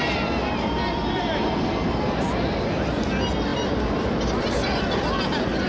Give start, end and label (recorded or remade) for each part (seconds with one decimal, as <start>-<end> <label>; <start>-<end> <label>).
0.0-5.7 recorded